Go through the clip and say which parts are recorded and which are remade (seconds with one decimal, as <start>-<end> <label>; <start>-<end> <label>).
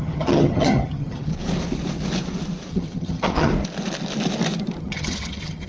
0.0-1.3 remade; 1.3-2.7 recorded; 2.7-3.5 remade; 3.5-4.8 recorded; 4.8-5.7 remade